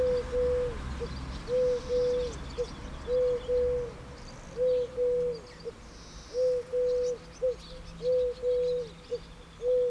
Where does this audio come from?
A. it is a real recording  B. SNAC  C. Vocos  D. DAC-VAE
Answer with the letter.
A